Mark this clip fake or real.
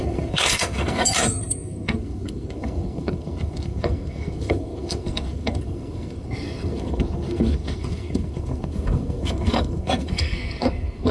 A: fake